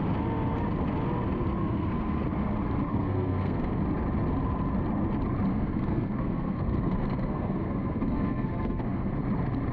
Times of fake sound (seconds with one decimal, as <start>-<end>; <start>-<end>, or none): 1.6-2.2; 2.9-3.8; 5.5-9.1